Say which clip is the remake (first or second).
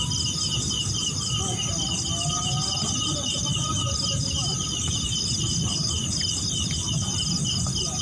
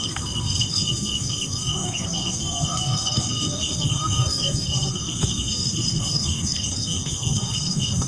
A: second